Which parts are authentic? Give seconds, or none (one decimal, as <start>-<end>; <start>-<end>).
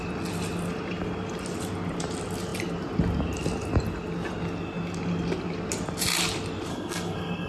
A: 0.0-6.7